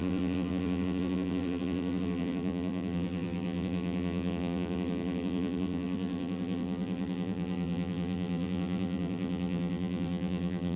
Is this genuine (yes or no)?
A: no